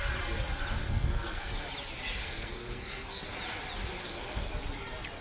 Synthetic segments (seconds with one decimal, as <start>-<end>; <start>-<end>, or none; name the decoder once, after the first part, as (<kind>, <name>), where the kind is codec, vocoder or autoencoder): 0.8-1.7 (codec, SNAC); 2.2-3.2; 4.0-4.5